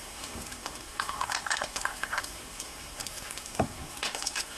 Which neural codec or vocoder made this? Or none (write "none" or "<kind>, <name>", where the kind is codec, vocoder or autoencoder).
codec, SNAC